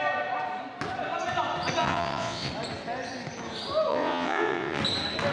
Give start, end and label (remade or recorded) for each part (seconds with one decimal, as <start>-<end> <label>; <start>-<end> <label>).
0.0-1.8 recorded; 1.8-2.5 remade; 2.5-3.9 recorded; 3.9-4.8 remade; 4.8-5.3 recorded